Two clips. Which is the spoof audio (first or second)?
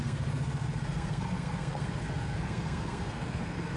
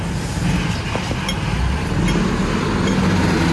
first